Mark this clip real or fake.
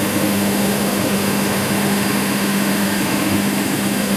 fake